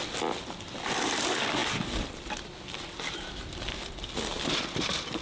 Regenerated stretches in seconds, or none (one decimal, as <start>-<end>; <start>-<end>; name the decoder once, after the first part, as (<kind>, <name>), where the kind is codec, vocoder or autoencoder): 1.6-3.3 (vocoder, BigVGAN v2)

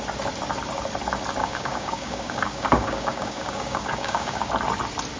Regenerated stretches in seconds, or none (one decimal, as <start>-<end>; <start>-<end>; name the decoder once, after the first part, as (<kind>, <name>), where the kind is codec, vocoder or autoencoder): 1.4-4.5 (codec, DAC)

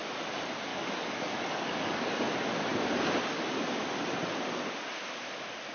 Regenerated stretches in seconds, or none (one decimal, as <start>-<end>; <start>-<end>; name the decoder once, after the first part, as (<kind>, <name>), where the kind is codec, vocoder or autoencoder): 0.7-2.3 (codec, DAC)

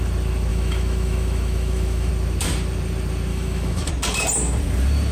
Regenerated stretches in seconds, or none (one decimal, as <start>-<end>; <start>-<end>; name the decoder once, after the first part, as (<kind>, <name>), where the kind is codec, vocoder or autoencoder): 0.5-2.1 (autoencoder, DAC-VAE); 3.3-3.9

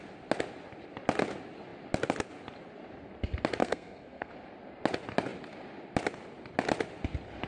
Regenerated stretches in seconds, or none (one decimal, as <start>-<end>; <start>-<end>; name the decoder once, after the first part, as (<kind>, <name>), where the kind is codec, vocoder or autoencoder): 3.6-4.3 (codec, SNAC)

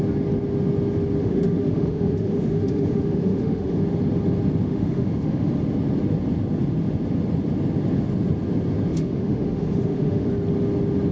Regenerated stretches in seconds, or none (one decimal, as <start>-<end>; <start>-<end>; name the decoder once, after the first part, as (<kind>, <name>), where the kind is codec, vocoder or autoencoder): 1.2-3.8 (autoencoder, DAC-VAE); 4.6-5.5; 8.9-10.3